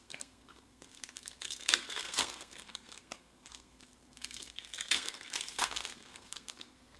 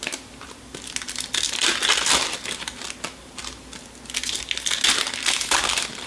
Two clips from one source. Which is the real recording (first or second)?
second